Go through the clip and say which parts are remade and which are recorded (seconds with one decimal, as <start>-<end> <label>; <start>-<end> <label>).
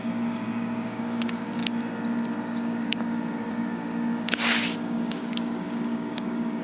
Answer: 0.0-1.6 remade; 1.6-2.4 recorded; 2.4-6.6 remade